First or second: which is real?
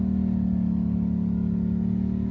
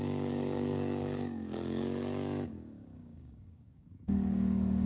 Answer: first